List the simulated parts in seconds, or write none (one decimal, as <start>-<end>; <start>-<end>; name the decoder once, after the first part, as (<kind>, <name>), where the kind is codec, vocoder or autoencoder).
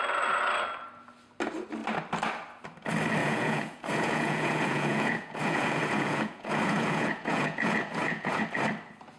3.2-8.4 (vocoder, Vocos)